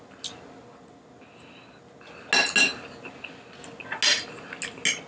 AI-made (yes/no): no